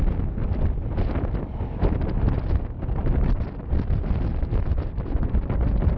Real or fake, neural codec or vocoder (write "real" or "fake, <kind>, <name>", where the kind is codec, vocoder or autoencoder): fake, vocoder, BigVGAN v2